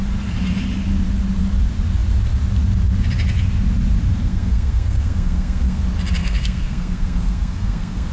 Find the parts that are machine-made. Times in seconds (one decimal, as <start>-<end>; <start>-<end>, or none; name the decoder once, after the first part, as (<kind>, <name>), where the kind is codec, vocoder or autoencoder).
4.2-5.8 (codec, SNAC); 6.2-8.1